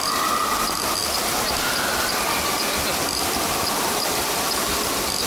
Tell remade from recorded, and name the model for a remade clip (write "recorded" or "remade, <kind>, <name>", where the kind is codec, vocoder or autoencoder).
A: recorded